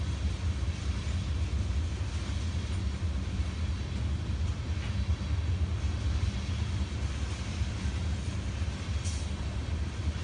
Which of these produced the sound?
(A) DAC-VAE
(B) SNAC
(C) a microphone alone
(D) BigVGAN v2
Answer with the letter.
C